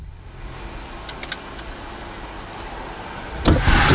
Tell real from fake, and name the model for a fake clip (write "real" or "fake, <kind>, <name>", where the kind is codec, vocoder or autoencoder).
real